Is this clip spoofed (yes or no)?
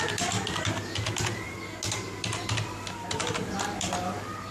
no